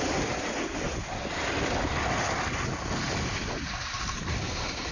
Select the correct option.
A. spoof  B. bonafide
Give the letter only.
B